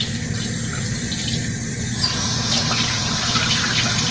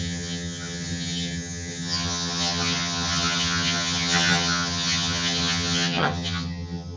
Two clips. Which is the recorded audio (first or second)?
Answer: first